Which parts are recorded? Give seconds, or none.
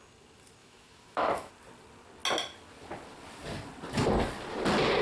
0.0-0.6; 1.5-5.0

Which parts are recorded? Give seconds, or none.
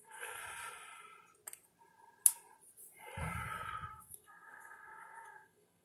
0.4-3.9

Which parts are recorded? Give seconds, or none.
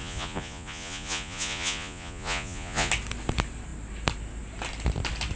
2.9-5.4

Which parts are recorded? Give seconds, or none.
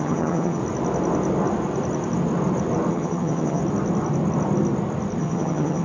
0.6-2.9; 3.6-5.2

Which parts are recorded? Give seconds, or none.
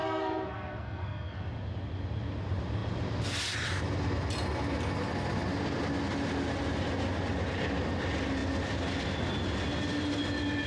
1.4-10.7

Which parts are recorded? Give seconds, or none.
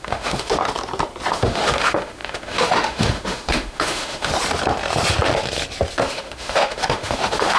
0.6-1.3; 4.3-6.1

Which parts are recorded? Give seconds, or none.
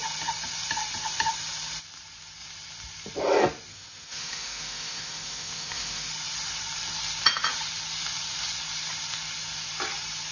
0.0-3.7; 6.1-10.3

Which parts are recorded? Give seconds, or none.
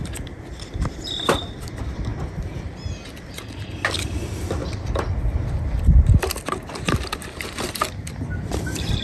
2.1-4.0; 4.6-5.6